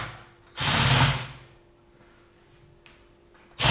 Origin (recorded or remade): recorded